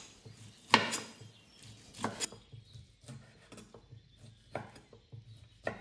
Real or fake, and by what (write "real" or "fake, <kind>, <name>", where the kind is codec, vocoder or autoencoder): real